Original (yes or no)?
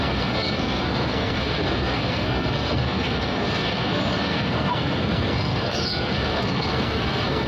no